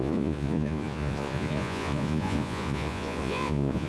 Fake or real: fake